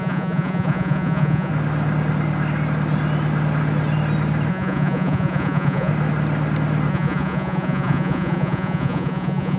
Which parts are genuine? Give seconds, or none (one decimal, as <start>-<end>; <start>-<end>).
1.5-4.5; 5.9-6.9